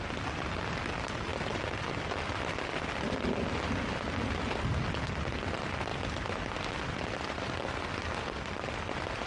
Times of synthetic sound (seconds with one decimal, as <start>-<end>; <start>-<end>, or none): none